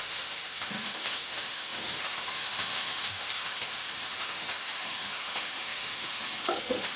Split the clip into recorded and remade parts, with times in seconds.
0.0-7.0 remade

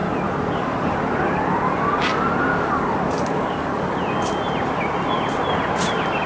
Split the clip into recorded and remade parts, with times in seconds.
0.0-2.5 recorded; 2.5-3.8 remade; 3.8-6.3 recorded

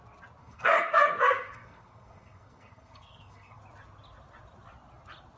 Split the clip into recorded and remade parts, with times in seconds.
0.0-0.4 recorded; 0.4-3.6 remade; 3.6-5.4 recorded

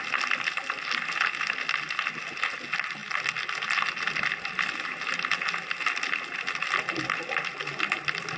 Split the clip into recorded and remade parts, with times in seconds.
0.0-8.4 recorded

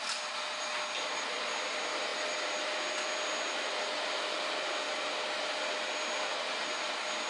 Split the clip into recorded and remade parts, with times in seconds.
0.0-7.3 recorded

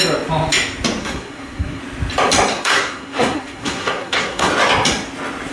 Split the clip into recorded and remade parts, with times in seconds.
0.0-1.0 recorded; 1.0-1.8 remade; 1.8-2.5 recorded; 2.5-4.5 remade; 4.5-5.5 recorded